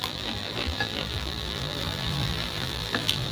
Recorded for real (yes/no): no